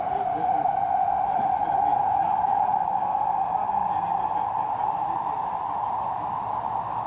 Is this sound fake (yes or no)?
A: yes